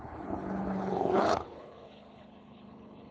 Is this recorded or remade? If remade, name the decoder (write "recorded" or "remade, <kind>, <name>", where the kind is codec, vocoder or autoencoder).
remade, codec, HILCodec